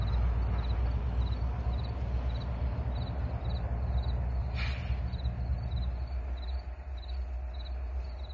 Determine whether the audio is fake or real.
real